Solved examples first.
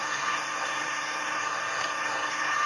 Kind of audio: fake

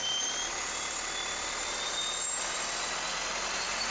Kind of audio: real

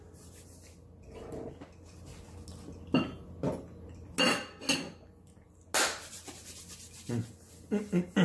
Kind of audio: real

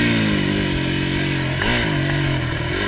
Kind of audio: real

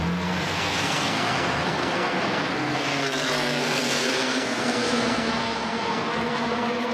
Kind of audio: fake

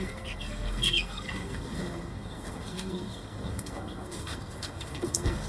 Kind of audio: fake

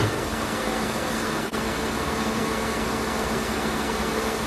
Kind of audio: fake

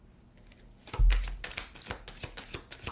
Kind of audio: real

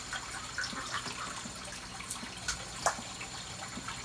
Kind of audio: real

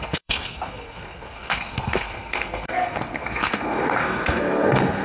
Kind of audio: fake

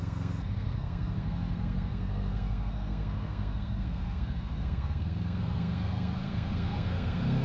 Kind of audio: fake